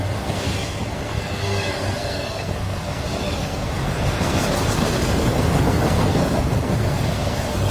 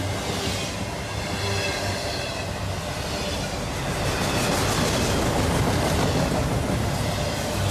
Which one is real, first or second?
second